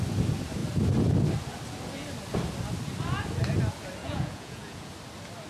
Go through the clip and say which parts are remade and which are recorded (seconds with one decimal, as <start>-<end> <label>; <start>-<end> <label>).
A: 0.0-4.0 recorded; 4.0-4.9 remade; 4.9-5.5 recorded